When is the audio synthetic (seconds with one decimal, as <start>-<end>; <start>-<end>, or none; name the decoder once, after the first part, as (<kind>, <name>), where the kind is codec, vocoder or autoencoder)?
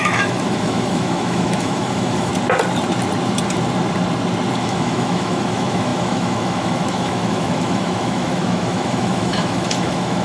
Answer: 0.0-2.3 (autoencoder, DAC-VAE); 4.6-10.2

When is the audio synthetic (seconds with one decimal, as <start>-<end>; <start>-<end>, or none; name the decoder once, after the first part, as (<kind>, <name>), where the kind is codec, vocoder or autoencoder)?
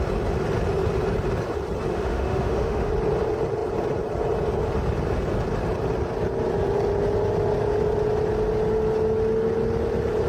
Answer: 1.9-2.9 (autoencoder, DAC-VAE)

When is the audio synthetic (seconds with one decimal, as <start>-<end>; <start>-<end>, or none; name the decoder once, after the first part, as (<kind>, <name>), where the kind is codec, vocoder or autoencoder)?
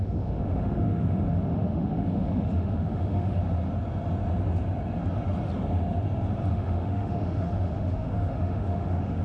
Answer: 0.0-3.4 (autoencoder, DAC-VAE); 6.5-9.2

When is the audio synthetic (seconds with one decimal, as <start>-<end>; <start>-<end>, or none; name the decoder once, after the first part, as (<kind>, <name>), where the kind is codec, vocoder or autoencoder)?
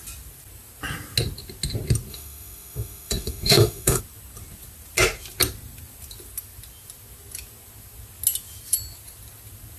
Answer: 2.1-4.0 (autoencoder, DAC-VAE)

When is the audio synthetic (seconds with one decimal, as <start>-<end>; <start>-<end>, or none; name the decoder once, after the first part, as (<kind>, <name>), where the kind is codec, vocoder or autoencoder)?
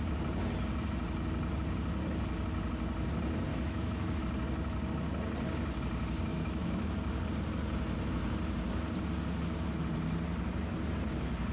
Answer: 3.5-4.2 (autoencoder, DAC-VAE); 6.3-7.2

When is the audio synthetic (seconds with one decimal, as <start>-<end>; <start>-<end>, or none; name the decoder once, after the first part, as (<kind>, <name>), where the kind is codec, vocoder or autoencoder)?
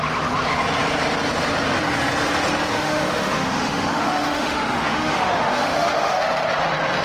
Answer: 2.7-6.2 (autoencoder, DAC-VAE)